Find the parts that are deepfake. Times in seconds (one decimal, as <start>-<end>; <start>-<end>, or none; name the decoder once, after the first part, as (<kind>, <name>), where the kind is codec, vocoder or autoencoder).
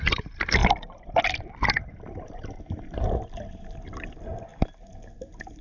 none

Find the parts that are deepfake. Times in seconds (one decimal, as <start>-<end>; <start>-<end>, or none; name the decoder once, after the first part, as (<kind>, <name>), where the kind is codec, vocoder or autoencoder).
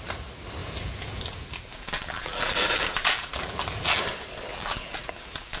0.6-4.0 (vocoder, BigVGAN v2); 4.5-5.6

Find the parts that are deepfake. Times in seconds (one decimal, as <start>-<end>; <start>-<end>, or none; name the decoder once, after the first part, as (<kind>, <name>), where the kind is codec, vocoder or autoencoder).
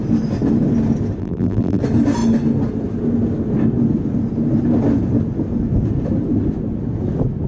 1.2-1.8 (vocoder, BigVGAN v2)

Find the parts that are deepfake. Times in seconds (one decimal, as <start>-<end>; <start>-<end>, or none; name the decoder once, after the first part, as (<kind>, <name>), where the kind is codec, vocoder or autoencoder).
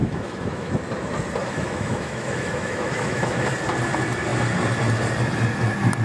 0.0-0.7 (autoencoder, DAC-VAE); 1.4-3.5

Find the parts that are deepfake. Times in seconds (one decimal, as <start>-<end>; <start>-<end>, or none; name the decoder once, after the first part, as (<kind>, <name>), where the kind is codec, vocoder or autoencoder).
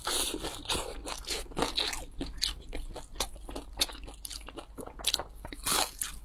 none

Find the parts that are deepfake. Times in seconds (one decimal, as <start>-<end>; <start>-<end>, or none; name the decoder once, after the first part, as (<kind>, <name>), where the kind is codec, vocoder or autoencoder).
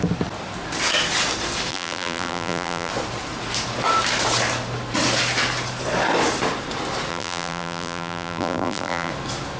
1.7-2.9 (vocoder, BigVGAN v2); 7.1-9.1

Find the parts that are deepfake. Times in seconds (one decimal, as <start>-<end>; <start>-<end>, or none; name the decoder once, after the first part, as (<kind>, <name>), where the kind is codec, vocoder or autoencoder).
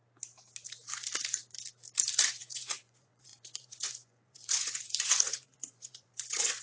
2.4-6.6 (vocoder, Vocos)